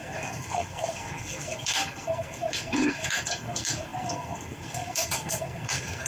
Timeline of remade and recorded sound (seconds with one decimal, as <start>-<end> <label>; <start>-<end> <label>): 0.0-6.1 remade